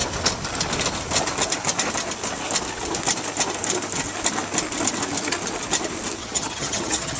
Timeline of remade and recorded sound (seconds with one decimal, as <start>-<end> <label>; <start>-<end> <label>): 0.0-6.2 recorded; 6.2-7.2 remade